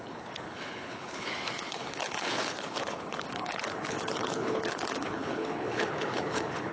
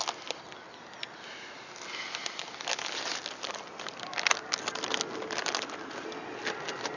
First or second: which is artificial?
first